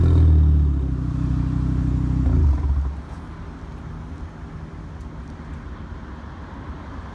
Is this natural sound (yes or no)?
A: yes